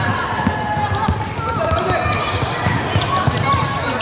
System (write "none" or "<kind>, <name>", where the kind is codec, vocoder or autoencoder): none